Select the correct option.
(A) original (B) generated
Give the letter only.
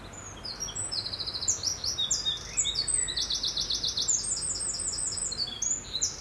A